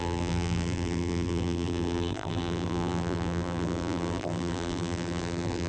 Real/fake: fake